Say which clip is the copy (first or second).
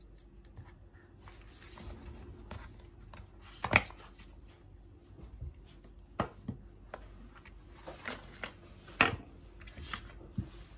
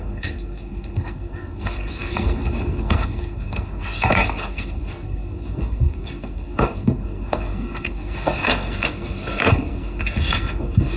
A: second